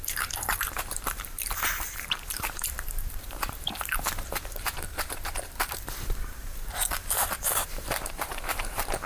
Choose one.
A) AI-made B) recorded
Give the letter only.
A